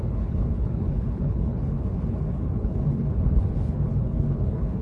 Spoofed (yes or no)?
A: yes